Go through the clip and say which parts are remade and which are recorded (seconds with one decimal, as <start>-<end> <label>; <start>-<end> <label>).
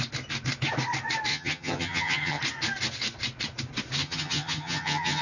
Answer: 0.0-1.3 recorded; 1.3-2.4 remade; 2.4-4.0 recorded; 4.0-5.2 remade